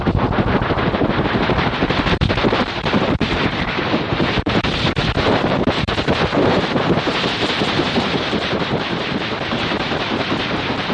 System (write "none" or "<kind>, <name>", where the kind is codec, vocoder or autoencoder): vocoder, BigVGAN v2